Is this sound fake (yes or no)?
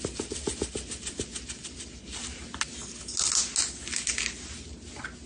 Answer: no